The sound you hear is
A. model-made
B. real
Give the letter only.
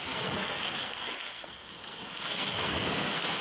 A